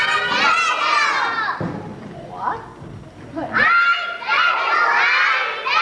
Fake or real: real